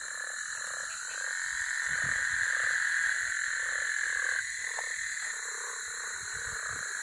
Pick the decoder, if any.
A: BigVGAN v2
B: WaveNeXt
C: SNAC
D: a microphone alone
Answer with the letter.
D